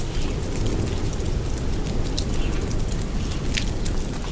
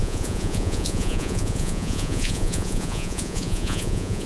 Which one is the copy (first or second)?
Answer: second